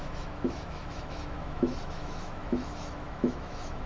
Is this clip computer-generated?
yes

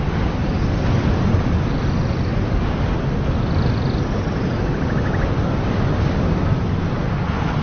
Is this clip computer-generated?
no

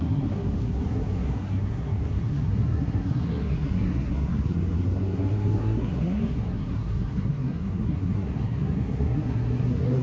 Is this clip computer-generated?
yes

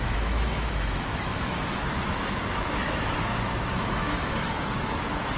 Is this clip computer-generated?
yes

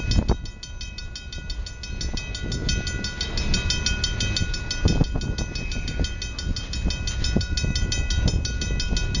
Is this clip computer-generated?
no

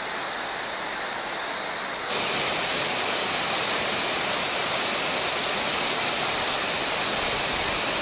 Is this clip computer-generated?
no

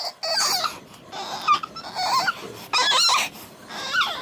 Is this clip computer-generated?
no